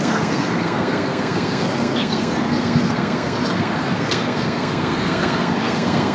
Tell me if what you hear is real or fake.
fake